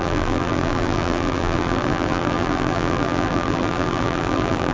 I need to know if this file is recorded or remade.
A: remade